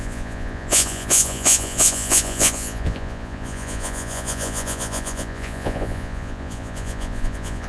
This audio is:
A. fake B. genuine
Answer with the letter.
A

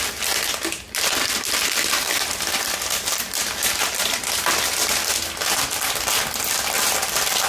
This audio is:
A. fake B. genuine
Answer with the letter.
B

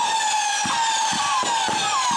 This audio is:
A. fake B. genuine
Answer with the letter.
B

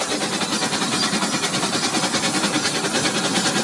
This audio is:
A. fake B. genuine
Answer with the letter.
B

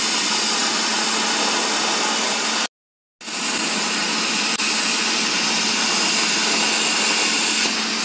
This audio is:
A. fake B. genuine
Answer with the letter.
B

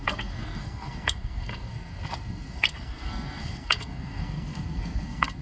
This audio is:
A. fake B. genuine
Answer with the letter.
A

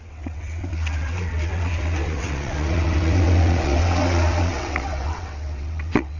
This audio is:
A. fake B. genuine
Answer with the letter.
A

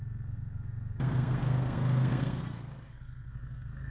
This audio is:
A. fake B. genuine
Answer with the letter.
A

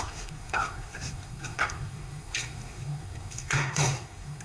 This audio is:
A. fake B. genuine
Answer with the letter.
A